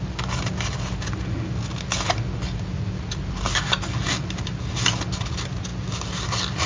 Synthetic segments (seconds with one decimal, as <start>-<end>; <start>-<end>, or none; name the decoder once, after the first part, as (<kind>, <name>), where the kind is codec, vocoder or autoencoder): none